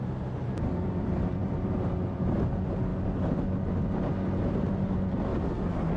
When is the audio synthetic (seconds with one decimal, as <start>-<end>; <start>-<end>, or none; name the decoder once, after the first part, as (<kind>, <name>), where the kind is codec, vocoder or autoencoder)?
0.0-2.9 (vocoder, BigVGAN v2); 4.7-5.3